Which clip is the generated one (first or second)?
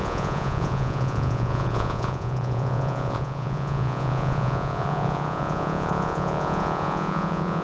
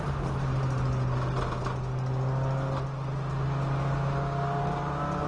first